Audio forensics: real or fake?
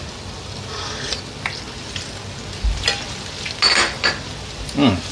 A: fake